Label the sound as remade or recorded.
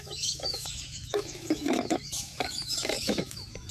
remade